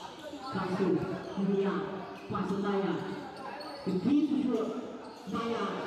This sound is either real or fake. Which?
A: fake